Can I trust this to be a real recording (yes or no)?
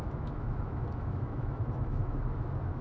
no